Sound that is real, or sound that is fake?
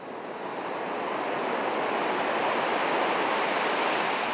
real